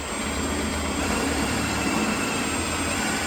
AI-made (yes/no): yes